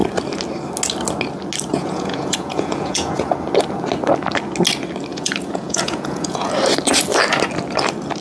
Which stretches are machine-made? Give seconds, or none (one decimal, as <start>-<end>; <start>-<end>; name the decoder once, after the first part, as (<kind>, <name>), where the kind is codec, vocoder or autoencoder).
1.7-3.3 (vocoder, Vocos); 5.1-6.5